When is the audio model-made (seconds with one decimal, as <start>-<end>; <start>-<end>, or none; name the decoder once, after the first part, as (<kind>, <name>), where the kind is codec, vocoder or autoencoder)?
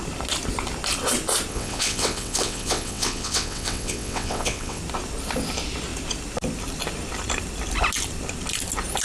1.5-4.8 (vocoder, WaveNeXt)